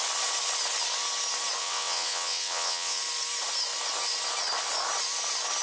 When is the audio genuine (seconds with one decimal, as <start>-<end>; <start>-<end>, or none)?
0.0-1.6; 3.0-5.6